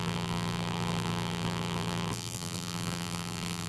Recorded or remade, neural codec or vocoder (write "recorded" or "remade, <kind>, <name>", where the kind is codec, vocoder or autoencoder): remade, vocoder, BigVGAN v2